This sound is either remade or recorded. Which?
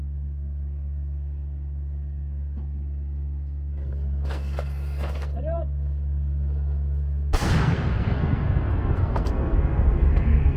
remade